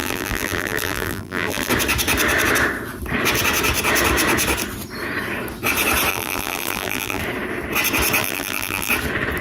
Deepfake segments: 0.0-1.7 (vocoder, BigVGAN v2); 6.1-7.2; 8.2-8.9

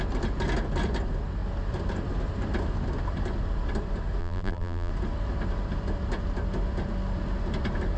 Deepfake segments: 4.2-4.9 (vocoder, BigVGAN v2)

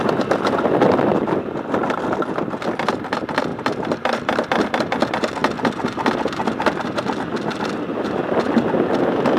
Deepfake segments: 3.5-4.8 (vocoder, BigVGAN v2); 5.4-8.2

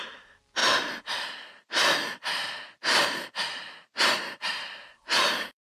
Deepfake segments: 0.0-0.6 (vocoder, BigVGAN v2); 4.0-5.7